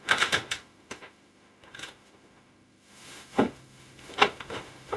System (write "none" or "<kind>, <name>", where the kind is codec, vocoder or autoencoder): autoencoder, DAC-VAE